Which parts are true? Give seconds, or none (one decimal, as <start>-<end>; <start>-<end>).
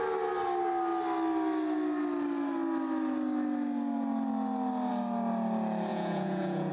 0.0-5.9